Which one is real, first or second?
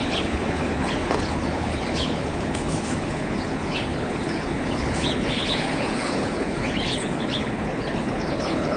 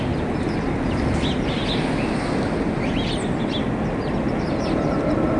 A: second